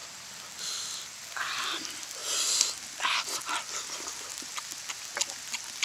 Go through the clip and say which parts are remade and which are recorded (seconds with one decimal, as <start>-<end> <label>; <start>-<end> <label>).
0.0-5.8 recorded